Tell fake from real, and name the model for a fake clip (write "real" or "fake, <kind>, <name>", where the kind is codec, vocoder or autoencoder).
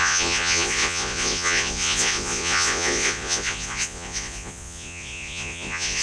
fake, vocoder, Vocos